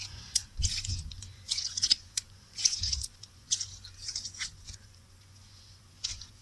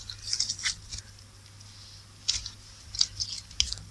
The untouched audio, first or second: second